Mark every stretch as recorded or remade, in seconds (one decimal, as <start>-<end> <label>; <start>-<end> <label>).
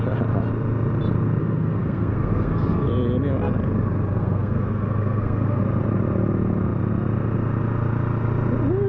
0.0-1.4 recorded; 1.4-2.9 remade; 2.9-4.2 recorded; 4.2-5.6 remade; 5.6-8.9 recorded